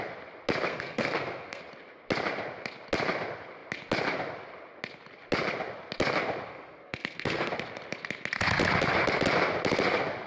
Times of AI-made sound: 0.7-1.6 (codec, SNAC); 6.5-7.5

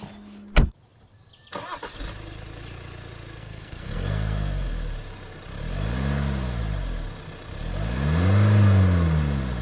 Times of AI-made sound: 3.4-4.7 (codec, SNAC)

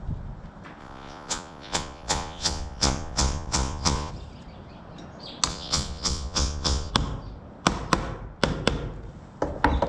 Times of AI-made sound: 0.8-4.1 (vocoder, Vocos); 5.5-6.9

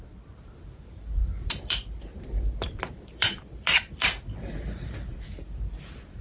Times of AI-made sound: 0.0-6.2 (vocoder, BigVGAN v2)

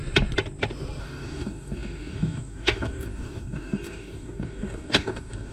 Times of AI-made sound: 1.0-5.5 (codec, DAC)